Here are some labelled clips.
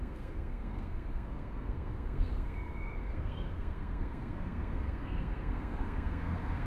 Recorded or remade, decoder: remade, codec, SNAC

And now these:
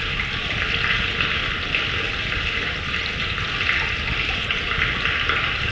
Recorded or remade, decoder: recorded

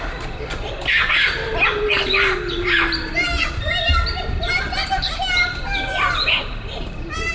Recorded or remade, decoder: recorded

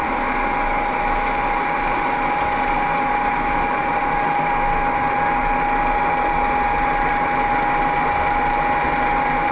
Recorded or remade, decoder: recorded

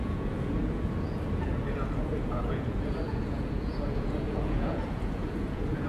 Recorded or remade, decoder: remade, vocoder, Vocos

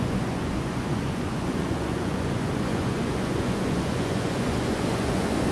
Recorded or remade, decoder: remade, vocoder, Vocos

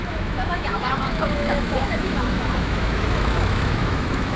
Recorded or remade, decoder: remade, autoencoder, DAC-VAE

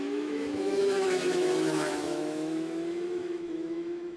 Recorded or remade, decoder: remade, autoencoder, DAC-VAE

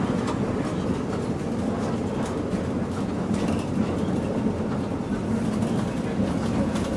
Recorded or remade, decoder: recorded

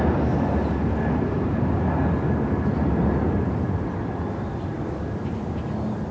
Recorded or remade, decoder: recorded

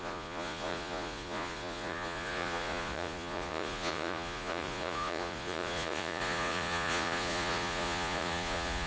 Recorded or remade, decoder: remade, vocoder, Vocos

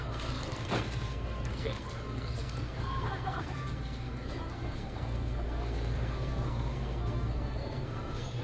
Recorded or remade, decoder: remade, codec, SNAC